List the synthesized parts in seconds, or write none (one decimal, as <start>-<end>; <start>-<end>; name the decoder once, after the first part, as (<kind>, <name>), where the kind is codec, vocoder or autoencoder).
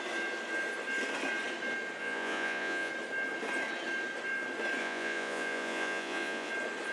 2.0-2.9 (vocoder, Vocos); 4.8-6.5